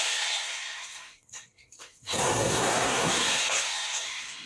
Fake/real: fake